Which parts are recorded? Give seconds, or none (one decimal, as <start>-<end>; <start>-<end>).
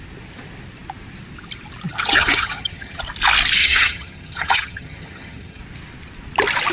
0.0-1.9; 3.0-3.6; 5.6-6.7